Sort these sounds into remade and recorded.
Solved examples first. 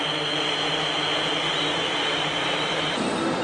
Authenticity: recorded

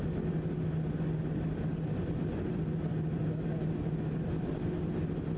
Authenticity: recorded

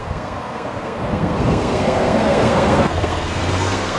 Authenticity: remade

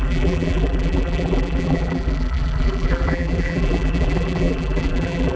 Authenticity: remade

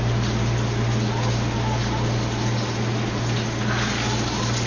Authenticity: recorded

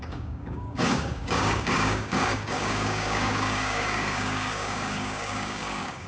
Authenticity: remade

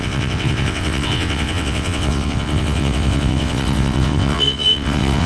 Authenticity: remade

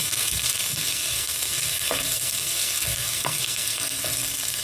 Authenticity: remade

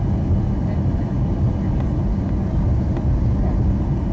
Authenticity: recorded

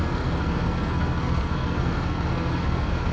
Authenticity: remade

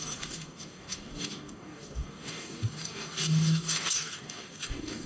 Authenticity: remade